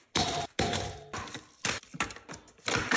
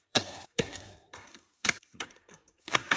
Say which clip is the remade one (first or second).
second